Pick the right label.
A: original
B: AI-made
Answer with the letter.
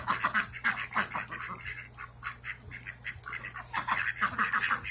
A